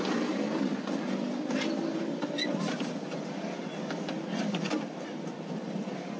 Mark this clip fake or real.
fake